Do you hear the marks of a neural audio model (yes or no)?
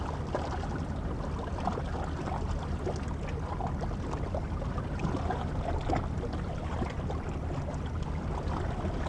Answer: no